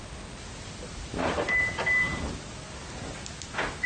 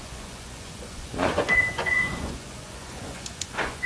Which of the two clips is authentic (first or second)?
first